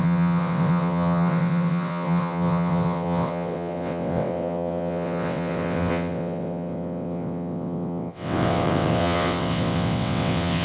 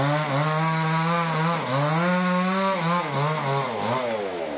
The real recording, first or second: second